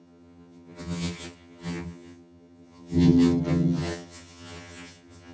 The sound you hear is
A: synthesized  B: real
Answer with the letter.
A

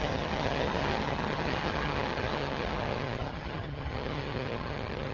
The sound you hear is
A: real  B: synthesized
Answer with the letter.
B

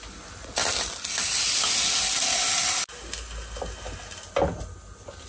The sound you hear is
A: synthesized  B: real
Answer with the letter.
B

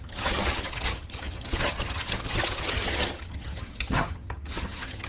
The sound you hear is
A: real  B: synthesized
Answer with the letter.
B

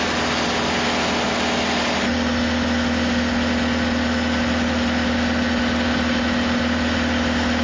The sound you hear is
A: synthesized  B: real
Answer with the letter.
B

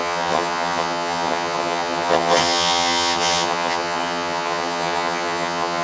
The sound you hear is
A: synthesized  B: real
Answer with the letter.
A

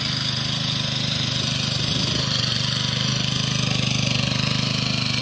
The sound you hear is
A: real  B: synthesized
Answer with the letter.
A